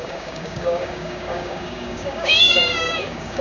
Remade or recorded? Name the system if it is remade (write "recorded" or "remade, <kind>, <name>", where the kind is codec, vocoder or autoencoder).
remade, codec, DAC